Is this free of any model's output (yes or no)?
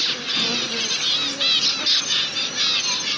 yes